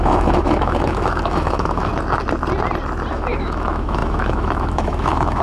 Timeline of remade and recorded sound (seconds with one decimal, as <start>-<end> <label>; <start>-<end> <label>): 0.0-1.9 remade; 1.9-3.1 recorded; 3.1-5.4 remade